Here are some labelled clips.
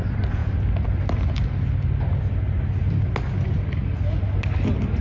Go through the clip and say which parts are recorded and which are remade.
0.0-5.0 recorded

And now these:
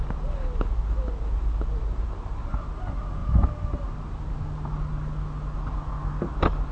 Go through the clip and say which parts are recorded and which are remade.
0.0-6.7 recorded

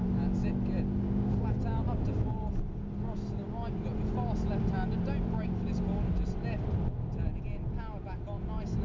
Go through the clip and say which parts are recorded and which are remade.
0.0-8.8 recorded

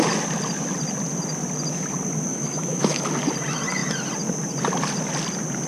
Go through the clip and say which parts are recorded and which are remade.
0.0-2.3 recorded; 2.3-3.0 remade; 3.0-5.7 recorded